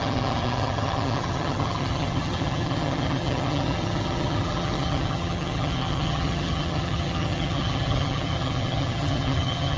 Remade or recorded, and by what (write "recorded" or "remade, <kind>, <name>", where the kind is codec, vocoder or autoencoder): remade, vocoder, HiFi-GAN